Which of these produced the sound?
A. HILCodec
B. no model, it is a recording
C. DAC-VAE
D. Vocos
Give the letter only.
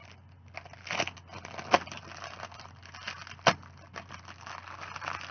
B